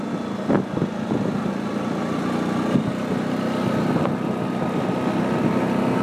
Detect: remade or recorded recorded